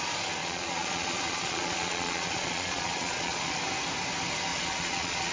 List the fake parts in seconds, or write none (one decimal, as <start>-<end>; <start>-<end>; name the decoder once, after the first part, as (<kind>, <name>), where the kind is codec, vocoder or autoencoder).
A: 0.4-3.6 (vocoder, Vocos); 4.5-5.3